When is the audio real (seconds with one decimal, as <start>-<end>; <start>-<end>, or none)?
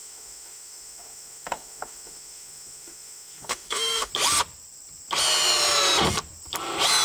4.1-7.0